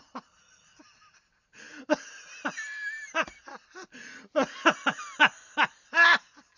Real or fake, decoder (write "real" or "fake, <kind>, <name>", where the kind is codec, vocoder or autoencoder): real